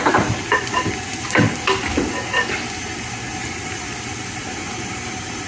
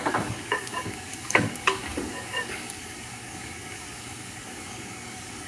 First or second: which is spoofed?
second